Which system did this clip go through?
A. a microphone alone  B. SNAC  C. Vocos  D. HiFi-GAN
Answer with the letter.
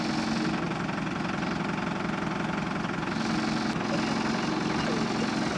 A